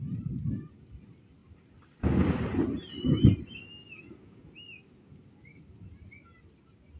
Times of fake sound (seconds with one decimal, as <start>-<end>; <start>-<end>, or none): none